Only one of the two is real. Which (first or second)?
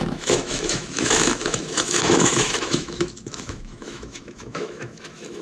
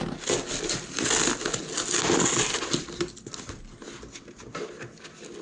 second